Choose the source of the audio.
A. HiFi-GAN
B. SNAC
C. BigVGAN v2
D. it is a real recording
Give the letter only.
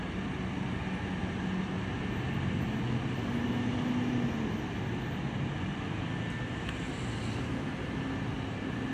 D